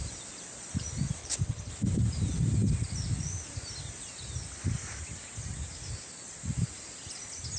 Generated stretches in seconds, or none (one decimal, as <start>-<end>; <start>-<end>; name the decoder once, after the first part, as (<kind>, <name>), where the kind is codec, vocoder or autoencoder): 1.2-1.7 (codec, HILCodec)